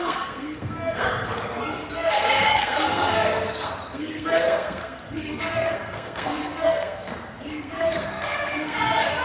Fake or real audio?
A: fake